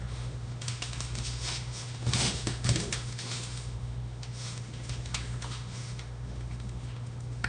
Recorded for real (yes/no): no